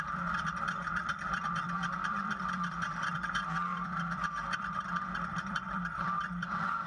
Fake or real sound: fake